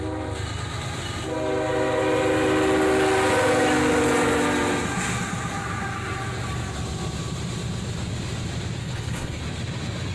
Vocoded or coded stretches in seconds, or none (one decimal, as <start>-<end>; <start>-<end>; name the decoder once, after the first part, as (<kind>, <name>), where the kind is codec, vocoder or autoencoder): 8.8-9.4 (codec, HILCodec)